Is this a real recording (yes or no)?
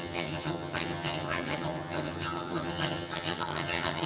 no